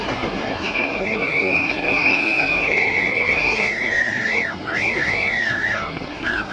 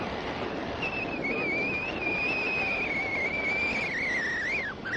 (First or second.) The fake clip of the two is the first